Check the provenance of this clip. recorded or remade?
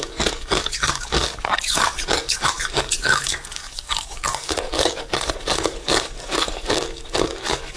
remade